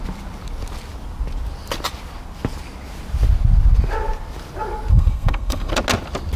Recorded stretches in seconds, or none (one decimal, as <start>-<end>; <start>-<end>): 0.0-4.9; 5.7-6.4